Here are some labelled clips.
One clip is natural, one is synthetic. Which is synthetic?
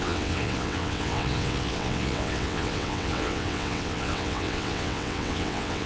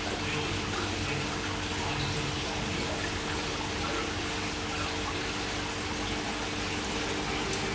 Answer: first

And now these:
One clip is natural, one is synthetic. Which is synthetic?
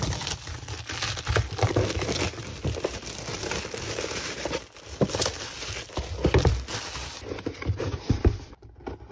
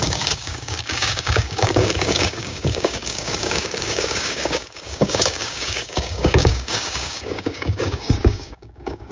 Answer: second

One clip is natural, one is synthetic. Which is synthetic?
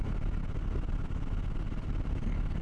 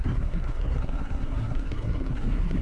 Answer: second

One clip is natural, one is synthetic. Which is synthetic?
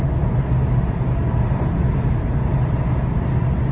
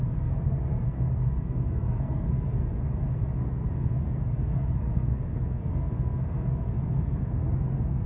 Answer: second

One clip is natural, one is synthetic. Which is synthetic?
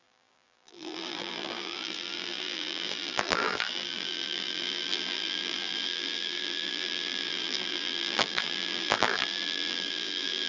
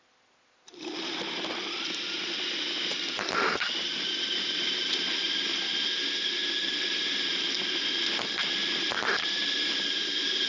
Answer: first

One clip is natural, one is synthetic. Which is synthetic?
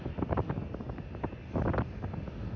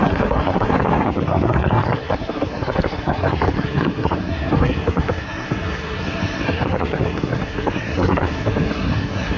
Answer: second